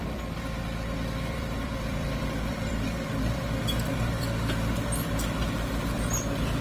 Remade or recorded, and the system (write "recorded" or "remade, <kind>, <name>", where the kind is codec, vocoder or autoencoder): remade, vocoder, BigVGAN v2